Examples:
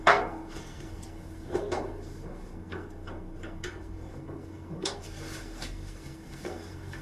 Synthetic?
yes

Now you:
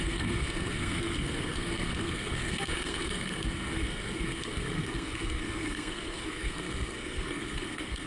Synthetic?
yes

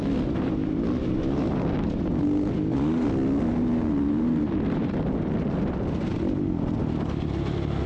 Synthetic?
no